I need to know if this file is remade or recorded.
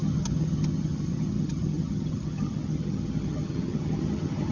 remade